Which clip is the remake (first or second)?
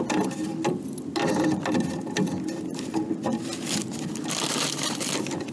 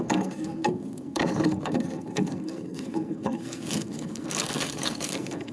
second